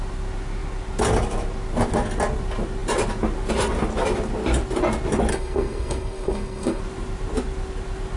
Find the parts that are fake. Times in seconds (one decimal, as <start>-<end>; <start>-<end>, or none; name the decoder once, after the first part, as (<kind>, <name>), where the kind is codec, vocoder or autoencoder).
5.3-6.8 (codec, SNAC)